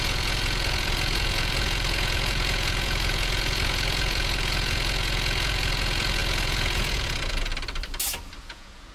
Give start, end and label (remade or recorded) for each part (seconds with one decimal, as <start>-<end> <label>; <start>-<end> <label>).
0.0-7.5 remade; 7.5-8.4 recorded; 8.4-8.9 remade